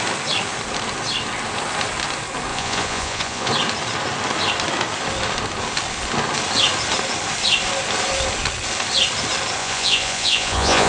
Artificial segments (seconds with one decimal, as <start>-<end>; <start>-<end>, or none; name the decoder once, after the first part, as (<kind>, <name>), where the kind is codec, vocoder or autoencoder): 2.5-3.5 (vocoder, Vocos); 9.6-10.9